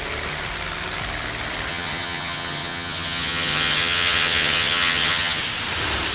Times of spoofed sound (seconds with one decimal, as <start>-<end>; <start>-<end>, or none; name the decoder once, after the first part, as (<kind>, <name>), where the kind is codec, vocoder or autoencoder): 1.7-5.4 (vocoder, HiFi-GAN)